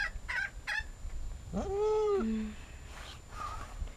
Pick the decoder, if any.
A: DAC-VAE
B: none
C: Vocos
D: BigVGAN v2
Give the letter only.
B